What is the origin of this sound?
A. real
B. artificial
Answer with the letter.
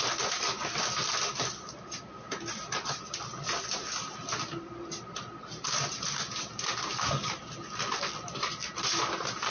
A